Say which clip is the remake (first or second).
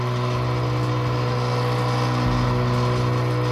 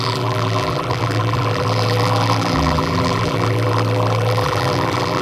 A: second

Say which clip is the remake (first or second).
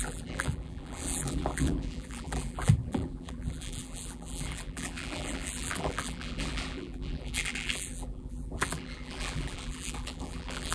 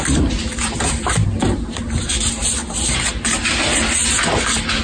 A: first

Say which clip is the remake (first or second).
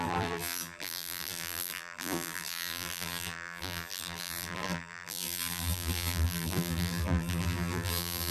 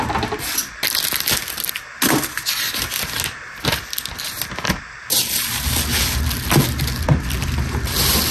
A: first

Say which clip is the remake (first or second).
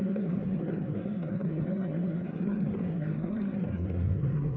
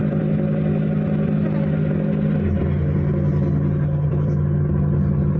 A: first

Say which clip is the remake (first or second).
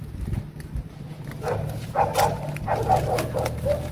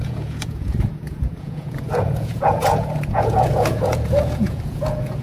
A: second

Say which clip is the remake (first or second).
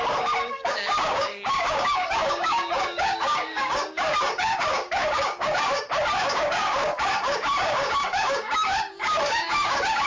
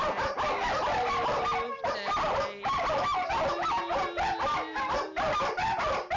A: first